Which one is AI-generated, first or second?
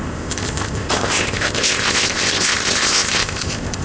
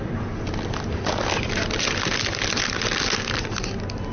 first